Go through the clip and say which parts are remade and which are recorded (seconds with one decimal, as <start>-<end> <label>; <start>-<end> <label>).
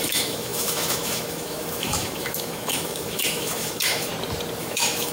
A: 0.0-4.1 remade; 4.1-4.6 recorded; 4.6-5.1 remade